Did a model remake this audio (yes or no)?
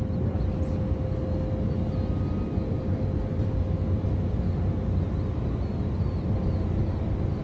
no